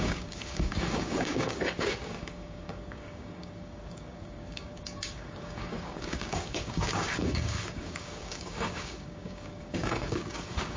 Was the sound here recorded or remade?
remade